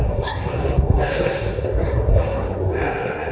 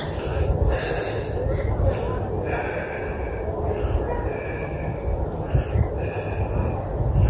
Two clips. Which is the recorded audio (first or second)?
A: second